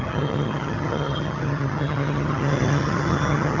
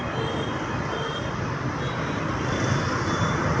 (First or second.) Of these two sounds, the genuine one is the second